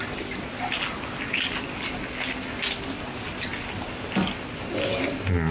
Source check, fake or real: real